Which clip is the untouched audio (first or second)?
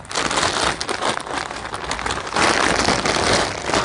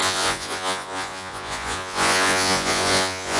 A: first